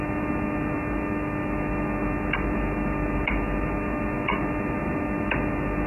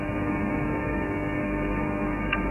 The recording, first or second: first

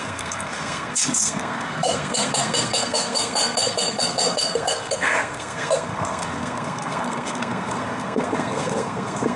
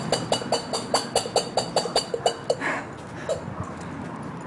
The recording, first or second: second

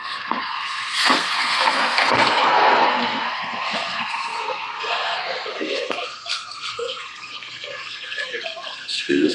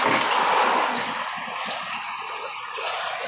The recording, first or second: second